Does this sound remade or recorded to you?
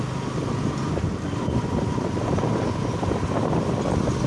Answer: recorded